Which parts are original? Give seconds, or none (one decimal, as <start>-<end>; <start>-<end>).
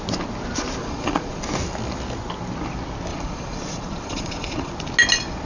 0.0-0.8; 1.4-3.1; 4.7-5.5